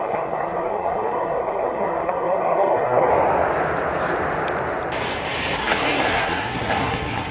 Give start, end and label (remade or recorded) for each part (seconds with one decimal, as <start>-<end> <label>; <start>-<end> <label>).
0.0-3.1 remade; 3.1-5.6 recorded; 5.6-7.3 remade